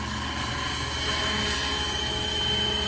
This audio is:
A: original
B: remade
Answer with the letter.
A